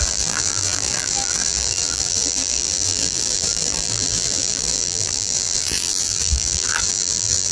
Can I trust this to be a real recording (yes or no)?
no